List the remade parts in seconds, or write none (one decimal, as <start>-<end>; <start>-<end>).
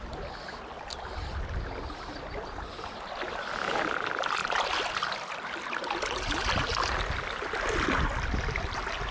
none